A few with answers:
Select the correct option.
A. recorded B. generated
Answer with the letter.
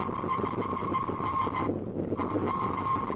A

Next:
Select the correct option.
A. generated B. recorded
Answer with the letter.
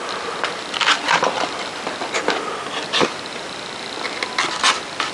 B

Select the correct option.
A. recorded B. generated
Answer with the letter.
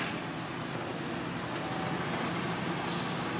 A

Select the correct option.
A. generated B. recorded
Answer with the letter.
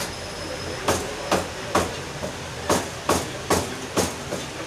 B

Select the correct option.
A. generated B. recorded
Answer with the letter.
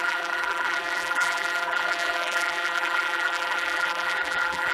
A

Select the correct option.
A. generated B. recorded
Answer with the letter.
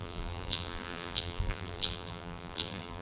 A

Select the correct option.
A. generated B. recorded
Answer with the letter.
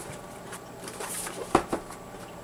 A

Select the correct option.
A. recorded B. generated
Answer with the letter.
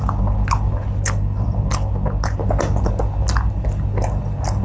A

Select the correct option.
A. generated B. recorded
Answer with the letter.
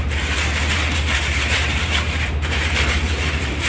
A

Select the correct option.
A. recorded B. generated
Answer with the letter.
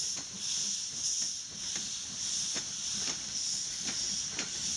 A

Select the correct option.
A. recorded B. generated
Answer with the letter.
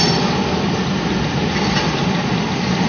B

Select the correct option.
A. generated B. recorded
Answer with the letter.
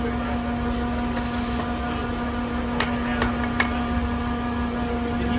B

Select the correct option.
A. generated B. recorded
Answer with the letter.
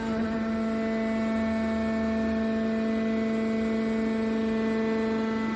B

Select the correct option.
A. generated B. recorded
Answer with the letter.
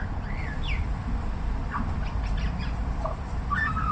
A